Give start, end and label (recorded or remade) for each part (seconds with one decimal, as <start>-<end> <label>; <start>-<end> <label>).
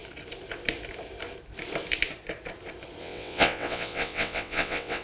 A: 0.0-3.0 recorded; 3.0-5.0 remade